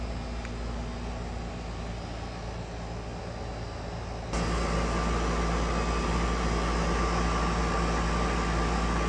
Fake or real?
real